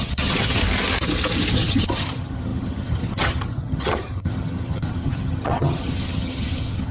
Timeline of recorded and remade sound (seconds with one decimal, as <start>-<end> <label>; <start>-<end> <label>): 0.0-0.6 remade; 0.6-1.5 recorded; 1.5-6.9 remade